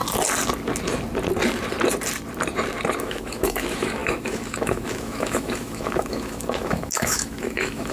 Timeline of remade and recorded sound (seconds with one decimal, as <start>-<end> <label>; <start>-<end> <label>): 0.0-3.0 recorded; 3.0-7.9 remade